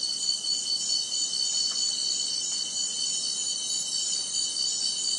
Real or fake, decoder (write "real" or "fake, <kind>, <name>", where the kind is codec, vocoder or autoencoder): real